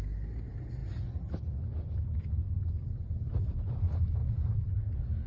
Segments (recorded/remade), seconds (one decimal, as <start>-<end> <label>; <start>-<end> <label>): 0.0-4.2 recorded; 4.2-5.3 remade